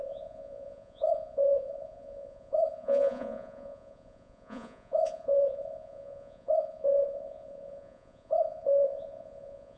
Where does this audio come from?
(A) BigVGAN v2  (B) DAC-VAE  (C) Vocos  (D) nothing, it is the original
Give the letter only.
C